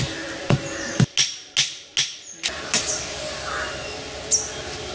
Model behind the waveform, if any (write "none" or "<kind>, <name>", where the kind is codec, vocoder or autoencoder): none